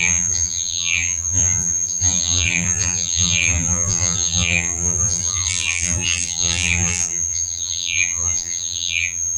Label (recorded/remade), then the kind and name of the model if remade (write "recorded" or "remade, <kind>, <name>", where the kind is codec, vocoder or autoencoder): remade, vocoder, BigVGAN v2